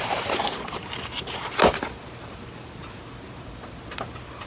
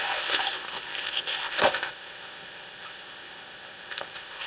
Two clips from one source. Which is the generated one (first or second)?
second